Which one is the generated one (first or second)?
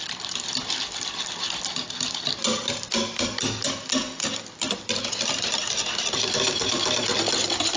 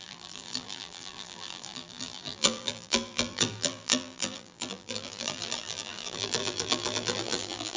second